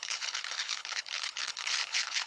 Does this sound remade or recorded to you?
remade